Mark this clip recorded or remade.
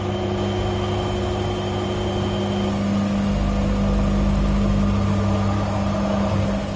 recorded